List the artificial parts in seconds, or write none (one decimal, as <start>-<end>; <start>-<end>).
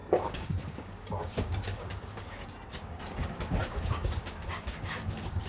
0.0-5.5